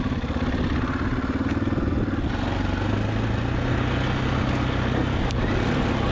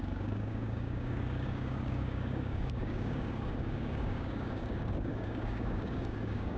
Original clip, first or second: first